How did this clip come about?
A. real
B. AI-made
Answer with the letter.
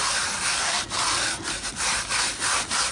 A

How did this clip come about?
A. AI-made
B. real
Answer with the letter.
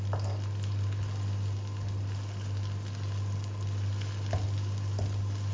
B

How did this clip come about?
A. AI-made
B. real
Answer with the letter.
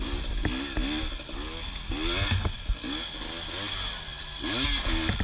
B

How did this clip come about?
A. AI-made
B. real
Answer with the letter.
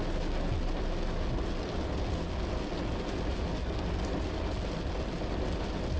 B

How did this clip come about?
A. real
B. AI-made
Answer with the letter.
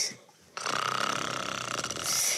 A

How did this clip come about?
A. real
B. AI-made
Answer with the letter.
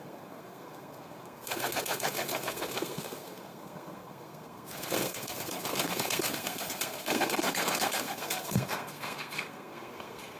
B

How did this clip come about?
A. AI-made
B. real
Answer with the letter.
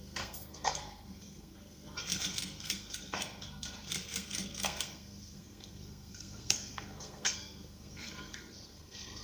A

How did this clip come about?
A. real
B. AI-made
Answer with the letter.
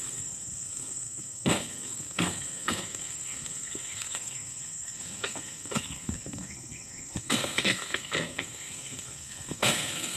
B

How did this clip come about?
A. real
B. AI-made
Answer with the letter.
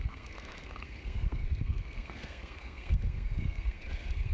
B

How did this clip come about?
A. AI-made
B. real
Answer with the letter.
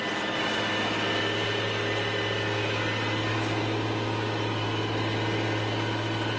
B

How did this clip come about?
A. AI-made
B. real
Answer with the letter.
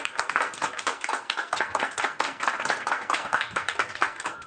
A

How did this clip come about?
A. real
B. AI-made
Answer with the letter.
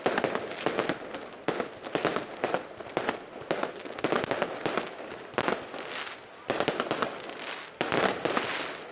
A